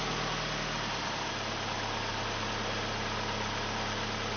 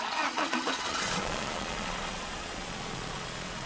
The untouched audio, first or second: first